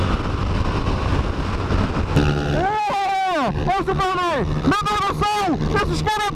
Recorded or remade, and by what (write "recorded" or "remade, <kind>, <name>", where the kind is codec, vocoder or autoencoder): recorded